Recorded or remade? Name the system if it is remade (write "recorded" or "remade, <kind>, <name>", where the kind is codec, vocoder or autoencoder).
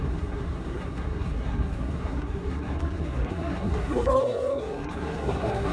remade, codec, SNAC